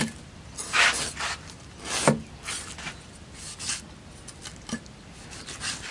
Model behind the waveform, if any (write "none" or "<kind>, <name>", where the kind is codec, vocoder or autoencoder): none